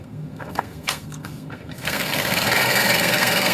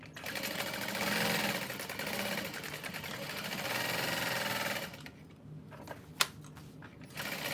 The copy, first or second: first